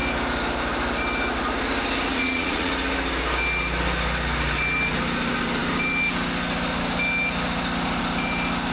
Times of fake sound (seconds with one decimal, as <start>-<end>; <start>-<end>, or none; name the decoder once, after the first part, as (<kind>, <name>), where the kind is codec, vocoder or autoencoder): 2.1-2.7 (vocoder, Vocos)